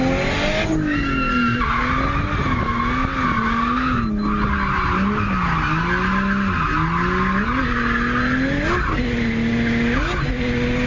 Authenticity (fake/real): real